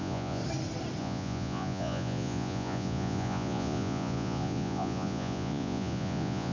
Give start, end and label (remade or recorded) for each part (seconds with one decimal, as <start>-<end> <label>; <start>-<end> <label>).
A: 0.0-0.4 remade; 0.4-1.0 recorded; 1.0-6.5 remade

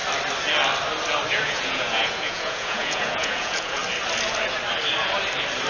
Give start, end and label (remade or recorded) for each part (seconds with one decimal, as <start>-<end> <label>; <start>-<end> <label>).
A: 0.0-1.3 recorded; 1.3-3.8 remade; 3.8-5.7 recorded

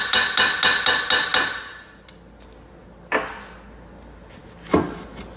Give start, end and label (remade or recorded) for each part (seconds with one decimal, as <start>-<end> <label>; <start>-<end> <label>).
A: 0.0-5.4 recorded

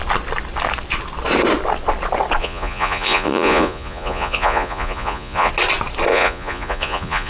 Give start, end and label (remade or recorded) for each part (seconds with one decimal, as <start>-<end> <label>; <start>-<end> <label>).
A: 0.0-2.4 recorded; 2.4-5.5 remade; 5.5-6.1 recorded; 6.1-7.3 remade

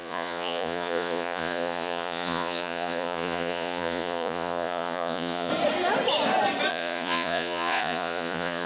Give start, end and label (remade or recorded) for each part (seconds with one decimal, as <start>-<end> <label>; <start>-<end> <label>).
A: 0.0-5.5 remade; 5.5-6.7 recorded; 6.7-8.7 remade